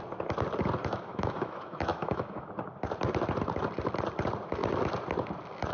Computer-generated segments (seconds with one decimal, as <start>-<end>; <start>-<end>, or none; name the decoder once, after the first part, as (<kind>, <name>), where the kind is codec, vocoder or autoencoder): 0.8-2.5 (autoencoder, DAC-VAE)